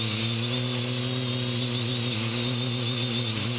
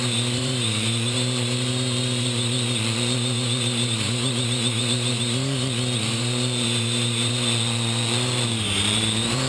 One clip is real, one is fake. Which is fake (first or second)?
second